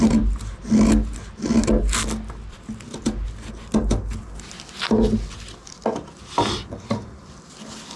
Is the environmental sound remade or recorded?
recorded